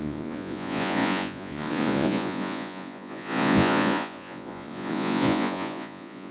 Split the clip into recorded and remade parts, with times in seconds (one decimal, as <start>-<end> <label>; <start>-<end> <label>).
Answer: 0.0-6.3 remade